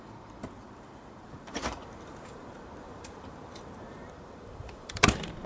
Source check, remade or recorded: remade